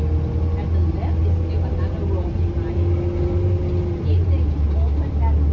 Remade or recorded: recorded